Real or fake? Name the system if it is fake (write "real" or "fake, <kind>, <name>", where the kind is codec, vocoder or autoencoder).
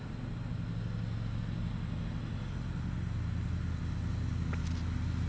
real